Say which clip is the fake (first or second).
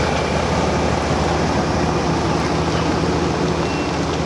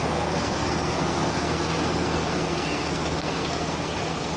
second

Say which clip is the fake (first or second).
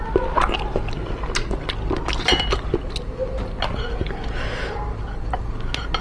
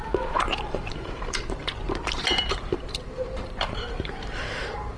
second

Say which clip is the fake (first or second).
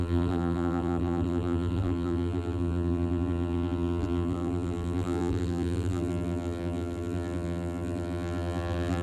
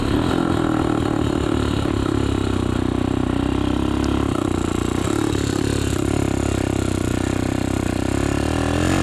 first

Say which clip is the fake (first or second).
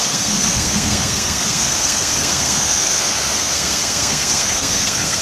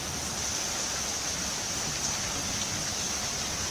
first